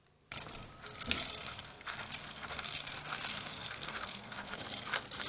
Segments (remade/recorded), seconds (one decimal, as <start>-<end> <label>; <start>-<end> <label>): 0.0-1.4 recorded; 1.4-4.6 remade; 4.6-5.3 recorded